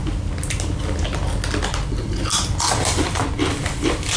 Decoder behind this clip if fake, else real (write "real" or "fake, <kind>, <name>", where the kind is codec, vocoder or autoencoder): real